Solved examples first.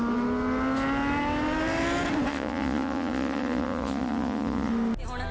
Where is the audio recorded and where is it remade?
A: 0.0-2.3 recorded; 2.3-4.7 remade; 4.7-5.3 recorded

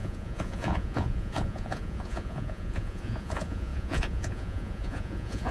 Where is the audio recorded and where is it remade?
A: 0.0-5.5 remade